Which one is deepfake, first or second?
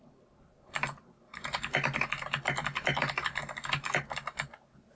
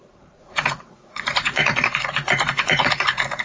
second